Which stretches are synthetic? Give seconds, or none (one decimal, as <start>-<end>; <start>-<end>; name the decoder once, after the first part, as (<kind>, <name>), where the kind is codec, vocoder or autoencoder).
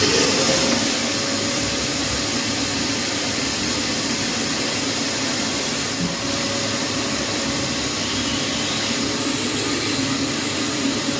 none